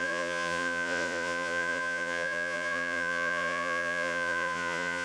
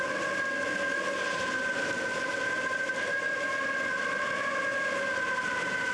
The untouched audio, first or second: second